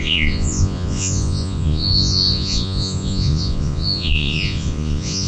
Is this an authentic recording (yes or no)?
no